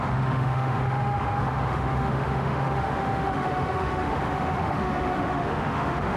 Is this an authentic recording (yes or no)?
no